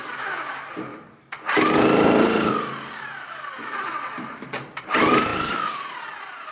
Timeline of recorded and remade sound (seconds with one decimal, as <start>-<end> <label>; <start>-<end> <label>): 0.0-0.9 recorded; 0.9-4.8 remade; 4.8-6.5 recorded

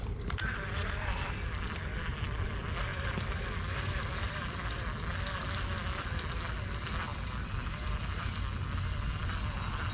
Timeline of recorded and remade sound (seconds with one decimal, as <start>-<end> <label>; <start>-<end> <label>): 0.0-2.9 recorded; 2.9-4.8 remade; 4.8-9.9 recorded

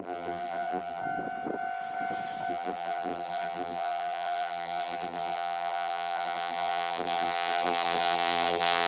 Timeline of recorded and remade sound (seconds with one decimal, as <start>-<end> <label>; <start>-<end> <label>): 0.0-1.0 remade; 1.0-2.5 recorded; 2.5-8.9 remade